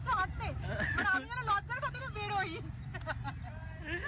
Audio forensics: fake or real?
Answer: real